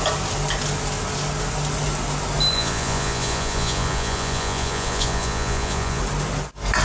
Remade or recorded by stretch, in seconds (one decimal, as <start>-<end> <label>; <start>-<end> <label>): 0.0-2.5 recorded; 2.5-6.0 remade; 6.0-6.8 recorded